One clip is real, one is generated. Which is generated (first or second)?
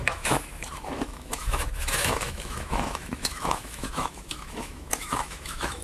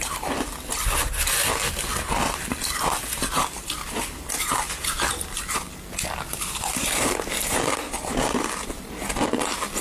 first